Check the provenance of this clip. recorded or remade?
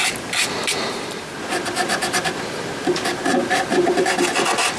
remade